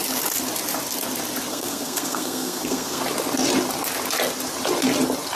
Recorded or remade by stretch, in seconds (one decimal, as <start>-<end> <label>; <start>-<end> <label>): 0.0-1.5 recorded; 1.5-3.0 remade; 3.0-5.4 recorded